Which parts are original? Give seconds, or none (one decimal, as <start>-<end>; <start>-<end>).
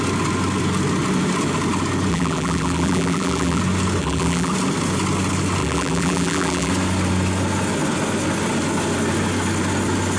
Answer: 0.0-2.1; 3.6-4.0; 4.5-5.6; 6.7-10.2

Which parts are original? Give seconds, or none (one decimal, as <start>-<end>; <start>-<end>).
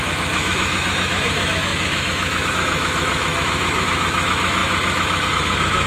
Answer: none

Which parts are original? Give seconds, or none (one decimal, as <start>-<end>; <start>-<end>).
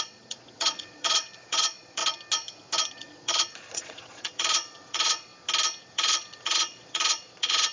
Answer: 2.0-2.9; 5.3-5.8